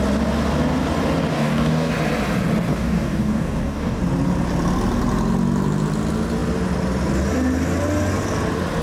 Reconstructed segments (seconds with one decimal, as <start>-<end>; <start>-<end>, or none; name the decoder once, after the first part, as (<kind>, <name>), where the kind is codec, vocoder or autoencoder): 1.3-1.9 (codec, DAC); 2.7-4.0